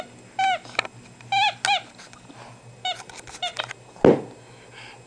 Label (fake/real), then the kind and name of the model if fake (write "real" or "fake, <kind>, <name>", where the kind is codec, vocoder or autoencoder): real